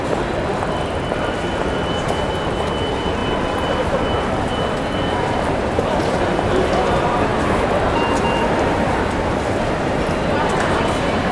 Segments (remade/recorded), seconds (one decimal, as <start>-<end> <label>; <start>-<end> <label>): 0.0-7.3 remade; 7.3-7.9 recorded; 7.9-11.3 remade